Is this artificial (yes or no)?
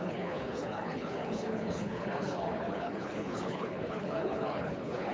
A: yes